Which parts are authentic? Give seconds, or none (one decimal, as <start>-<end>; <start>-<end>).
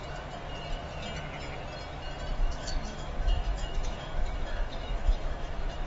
0.0-2.3